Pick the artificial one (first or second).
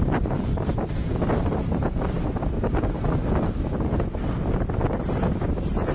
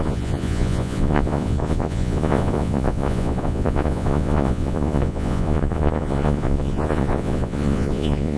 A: second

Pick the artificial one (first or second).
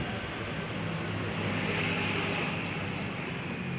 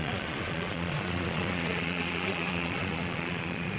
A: second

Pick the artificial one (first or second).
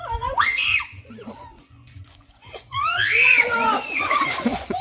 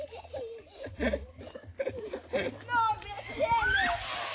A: first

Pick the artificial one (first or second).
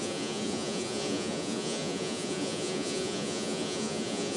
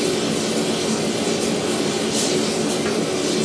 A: first